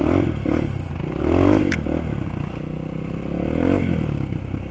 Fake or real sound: real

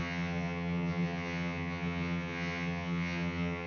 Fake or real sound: fake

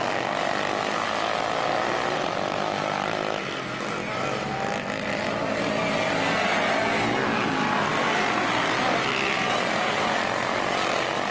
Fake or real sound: real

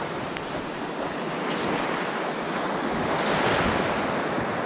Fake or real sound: real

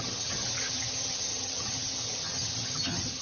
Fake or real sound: fake